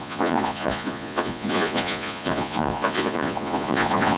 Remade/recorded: remade